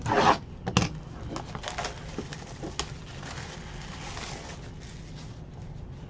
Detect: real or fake real